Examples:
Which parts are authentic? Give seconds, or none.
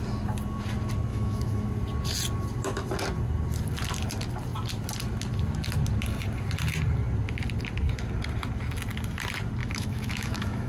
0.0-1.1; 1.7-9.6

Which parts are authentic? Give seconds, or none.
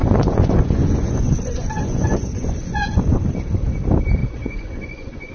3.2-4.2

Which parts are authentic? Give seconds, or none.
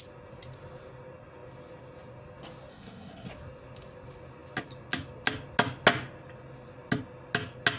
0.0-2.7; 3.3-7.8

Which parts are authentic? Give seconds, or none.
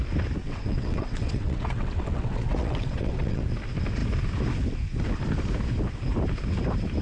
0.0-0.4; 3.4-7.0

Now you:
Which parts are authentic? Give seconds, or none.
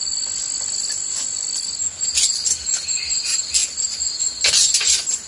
0.0-5.3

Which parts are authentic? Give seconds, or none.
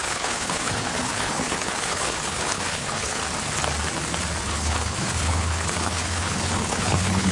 3.2-4.4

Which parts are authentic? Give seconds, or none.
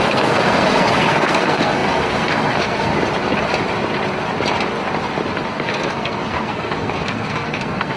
2.9-5.5